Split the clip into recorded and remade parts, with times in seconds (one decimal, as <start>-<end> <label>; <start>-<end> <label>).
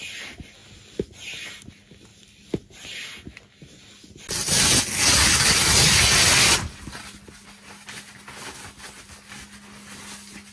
0.0-10.5 recorded